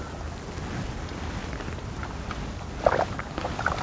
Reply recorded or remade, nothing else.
recorded